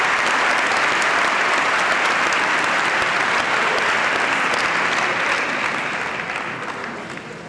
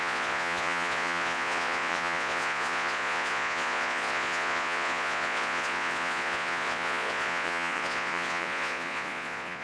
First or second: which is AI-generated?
second